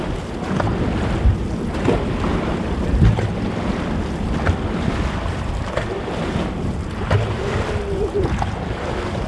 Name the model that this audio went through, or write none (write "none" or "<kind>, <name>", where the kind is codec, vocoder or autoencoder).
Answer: vocoder, BigVGAN v2